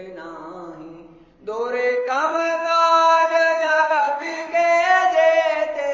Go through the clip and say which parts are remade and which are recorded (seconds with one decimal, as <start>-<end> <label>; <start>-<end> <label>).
0.0-1.9 recorded; 1.9-4.5 remade; 4.5-5.9 recorded